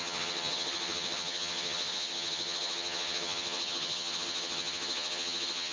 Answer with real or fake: fake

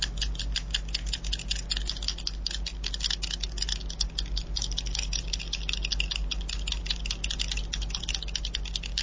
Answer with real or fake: real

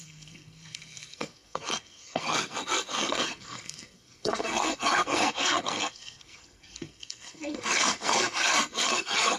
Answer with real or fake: fake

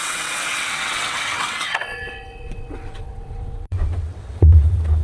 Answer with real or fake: fake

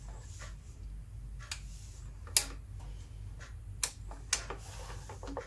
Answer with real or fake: real